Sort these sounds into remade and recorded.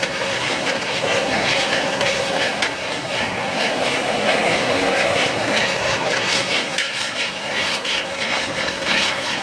remade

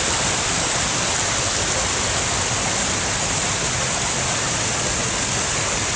recorded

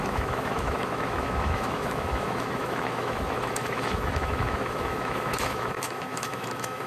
remade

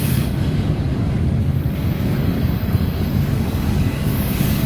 remade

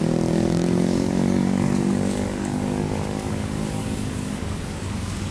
remade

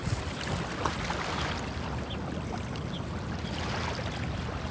recorded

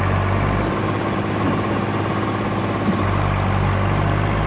recorded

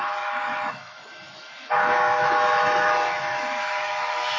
remade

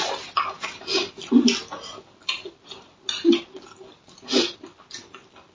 recorded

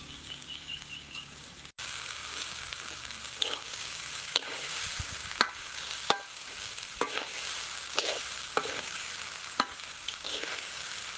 remade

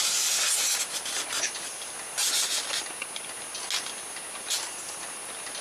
recorded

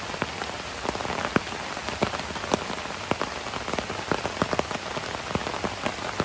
recorded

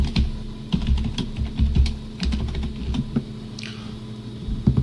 recorded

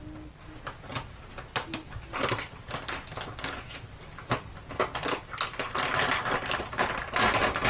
recorded